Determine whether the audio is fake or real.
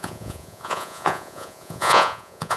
fake